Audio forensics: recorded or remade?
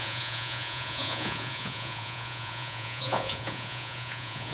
remade